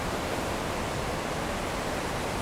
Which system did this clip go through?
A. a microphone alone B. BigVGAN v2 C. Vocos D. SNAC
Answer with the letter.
A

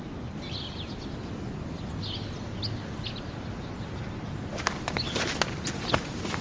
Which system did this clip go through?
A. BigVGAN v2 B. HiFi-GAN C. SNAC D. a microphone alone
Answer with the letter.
D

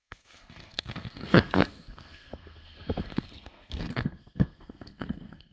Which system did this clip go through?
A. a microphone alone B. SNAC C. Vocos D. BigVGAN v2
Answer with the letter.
B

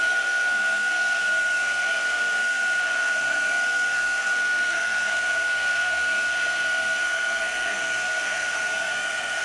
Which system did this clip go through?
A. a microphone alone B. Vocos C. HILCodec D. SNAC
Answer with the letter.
D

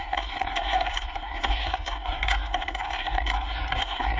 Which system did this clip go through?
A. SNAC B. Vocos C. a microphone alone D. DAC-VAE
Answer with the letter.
A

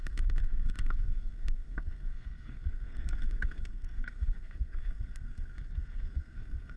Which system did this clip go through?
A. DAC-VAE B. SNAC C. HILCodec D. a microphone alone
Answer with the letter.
B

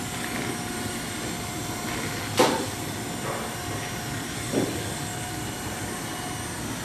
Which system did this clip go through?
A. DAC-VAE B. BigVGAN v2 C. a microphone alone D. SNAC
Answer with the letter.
C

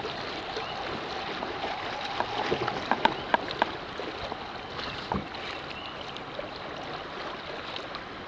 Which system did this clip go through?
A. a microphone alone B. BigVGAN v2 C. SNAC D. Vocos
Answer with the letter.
A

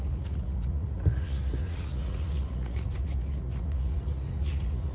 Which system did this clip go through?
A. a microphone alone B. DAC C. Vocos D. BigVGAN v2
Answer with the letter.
C